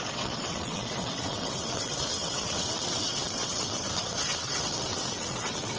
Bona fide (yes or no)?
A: no